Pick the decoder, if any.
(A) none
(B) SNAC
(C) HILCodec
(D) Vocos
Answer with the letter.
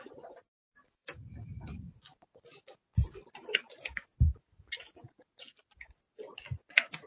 A